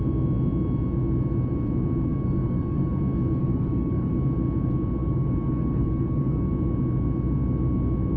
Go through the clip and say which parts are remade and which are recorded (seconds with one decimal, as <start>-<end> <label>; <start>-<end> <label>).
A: 0.0-2.1 recorded; 2.1-3.0 remade; 3.0-3.4 recorded; 3.4-4.1 remade; 4.1-5.0 recorded; 5.0-6.5 remade; 6.5-8.2 recorded